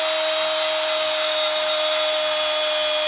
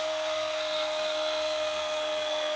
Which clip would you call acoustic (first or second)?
first